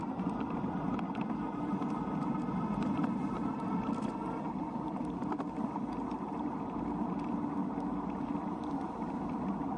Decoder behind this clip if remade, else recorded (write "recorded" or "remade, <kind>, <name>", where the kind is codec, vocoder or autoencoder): recorded